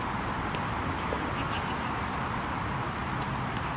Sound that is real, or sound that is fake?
real